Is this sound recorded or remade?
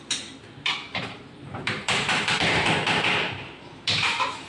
remade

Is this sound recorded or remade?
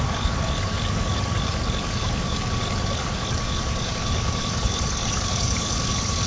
remade